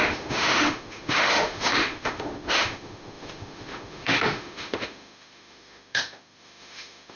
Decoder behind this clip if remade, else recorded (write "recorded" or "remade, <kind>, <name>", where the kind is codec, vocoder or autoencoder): remade, autoencoder, DAC-VAE